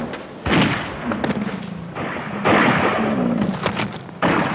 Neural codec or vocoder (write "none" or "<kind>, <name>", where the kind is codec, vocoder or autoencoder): none